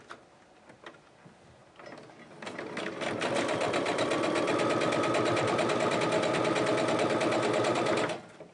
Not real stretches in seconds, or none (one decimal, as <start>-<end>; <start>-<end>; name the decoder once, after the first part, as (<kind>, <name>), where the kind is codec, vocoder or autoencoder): none